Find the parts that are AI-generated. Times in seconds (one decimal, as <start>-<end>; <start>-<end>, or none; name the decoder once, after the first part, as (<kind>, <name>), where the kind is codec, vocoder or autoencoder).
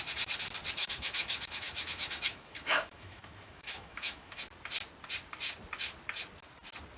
0.8-4.4 (autoencoder, DAC-VAE)